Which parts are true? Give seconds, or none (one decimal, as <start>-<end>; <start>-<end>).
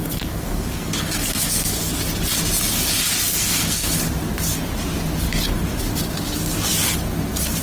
1.9-3.3; 4.0-7.6